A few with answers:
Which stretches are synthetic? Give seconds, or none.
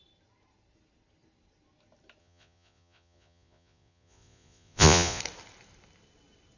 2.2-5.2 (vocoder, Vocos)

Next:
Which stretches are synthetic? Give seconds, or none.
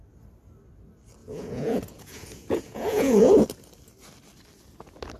1.2-3.4 (vocoder, Vocos)